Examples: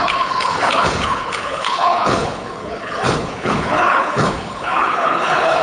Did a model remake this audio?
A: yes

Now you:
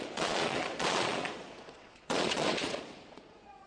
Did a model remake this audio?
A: yes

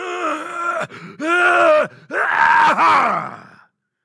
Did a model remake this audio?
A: no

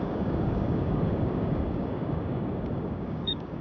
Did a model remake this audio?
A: yes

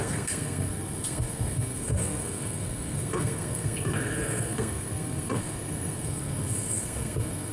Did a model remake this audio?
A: yes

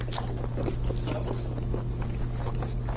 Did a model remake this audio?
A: no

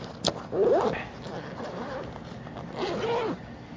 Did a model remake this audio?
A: no